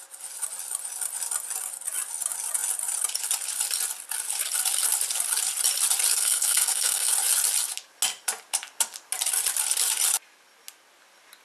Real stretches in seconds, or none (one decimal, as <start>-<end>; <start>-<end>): 0.0-6.1; 7.1-11.4